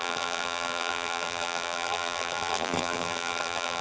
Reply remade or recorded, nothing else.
remade